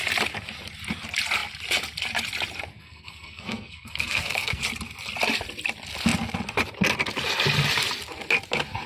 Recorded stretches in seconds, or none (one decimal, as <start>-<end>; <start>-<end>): 0.0-2.7; 4.6-8.9